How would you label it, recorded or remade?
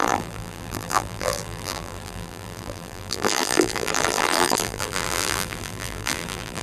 remade